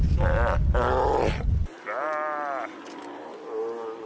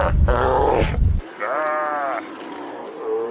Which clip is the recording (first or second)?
first